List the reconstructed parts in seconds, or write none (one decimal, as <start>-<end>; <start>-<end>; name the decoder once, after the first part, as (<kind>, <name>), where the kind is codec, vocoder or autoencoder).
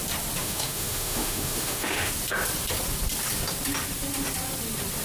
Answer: 0.4-2.1 (autoencoder, DAC-VAE)